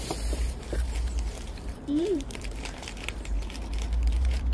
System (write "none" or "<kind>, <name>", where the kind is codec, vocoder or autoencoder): vocoder, BigVGAN v2